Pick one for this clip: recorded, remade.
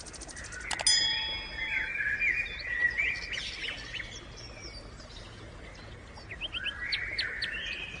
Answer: recorded